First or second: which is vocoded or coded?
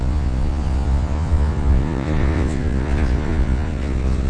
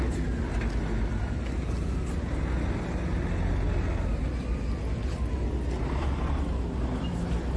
first